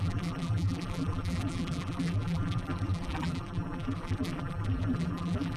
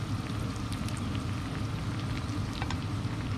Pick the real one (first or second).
second